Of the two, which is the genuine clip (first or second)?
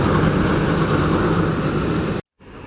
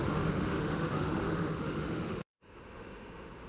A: first